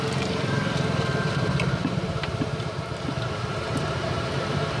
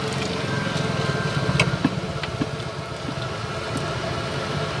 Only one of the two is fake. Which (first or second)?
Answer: first